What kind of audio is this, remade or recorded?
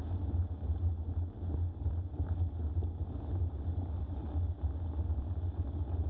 recorded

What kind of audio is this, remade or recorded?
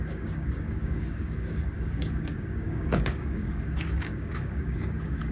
remade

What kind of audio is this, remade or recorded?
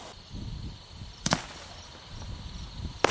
recorded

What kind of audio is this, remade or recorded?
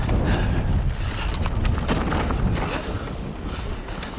recorded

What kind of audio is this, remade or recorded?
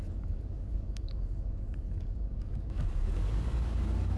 remade